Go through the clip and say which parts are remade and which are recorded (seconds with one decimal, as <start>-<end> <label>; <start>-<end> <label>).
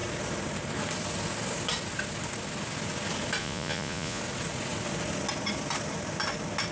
0.0-3.4 recorded; 3.4-4.2 remade; 4.2-6.7 recorded